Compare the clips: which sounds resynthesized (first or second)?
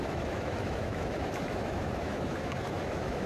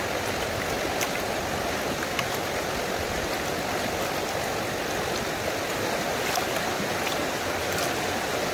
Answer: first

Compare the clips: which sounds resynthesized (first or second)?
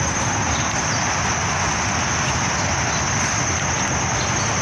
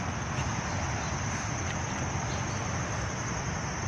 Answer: second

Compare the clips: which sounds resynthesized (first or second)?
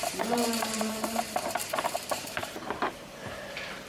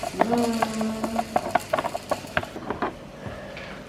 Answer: first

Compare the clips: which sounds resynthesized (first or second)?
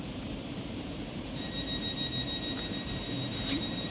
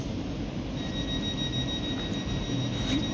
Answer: first